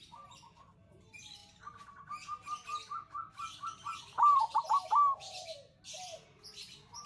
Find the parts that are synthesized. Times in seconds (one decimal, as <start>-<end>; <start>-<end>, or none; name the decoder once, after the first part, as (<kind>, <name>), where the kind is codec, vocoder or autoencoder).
none